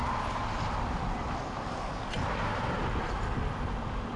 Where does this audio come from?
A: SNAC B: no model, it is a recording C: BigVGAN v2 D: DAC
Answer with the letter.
B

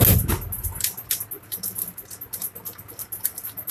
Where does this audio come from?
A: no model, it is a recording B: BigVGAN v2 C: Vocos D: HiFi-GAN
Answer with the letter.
A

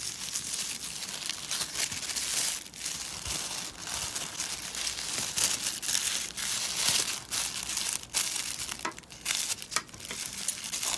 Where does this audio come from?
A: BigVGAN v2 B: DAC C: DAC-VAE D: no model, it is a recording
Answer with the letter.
D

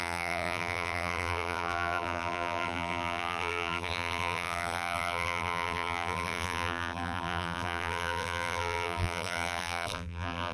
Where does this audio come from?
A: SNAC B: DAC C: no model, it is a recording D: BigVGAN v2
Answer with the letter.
D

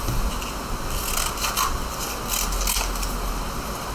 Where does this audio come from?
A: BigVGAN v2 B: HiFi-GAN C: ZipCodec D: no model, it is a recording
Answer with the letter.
D